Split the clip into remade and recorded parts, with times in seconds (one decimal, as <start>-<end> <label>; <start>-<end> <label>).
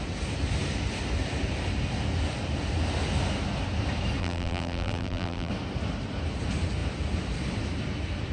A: 0.0-4.2 recorded; 4.2-5.5 remade; 5.5-8.3 recorded